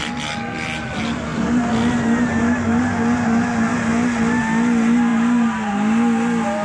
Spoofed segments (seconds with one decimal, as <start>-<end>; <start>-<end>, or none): none